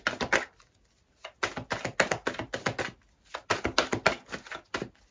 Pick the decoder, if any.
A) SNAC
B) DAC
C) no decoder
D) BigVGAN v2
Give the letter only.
C